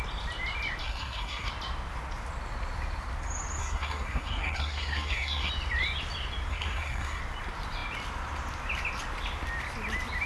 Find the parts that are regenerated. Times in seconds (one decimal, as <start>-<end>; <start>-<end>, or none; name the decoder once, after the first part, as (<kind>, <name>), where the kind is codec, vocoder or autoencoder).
0.8-1.5 (codec, SNAC); 3.6-5.5; 6.5-7.2